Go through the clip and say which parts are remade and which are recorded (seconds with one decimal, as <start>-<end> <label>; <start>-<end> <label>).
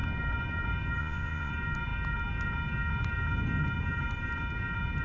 0.0-1.0 recorded; 1.0-1.5 remade; 1.5-5.0 recorded